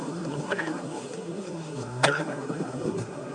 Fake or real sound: fake